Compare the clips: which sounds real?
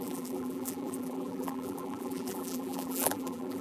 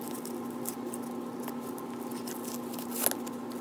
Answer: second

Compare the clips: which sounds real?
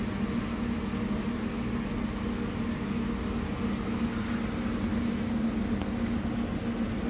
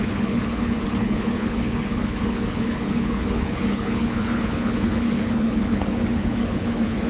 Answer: first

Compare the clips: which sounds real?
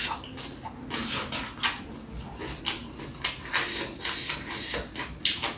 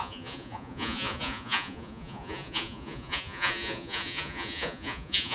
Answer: first